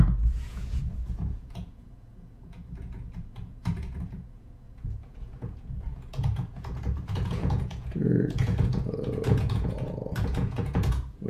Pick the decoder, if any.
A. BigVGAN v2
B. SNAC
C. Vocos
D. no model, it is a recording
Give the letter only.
C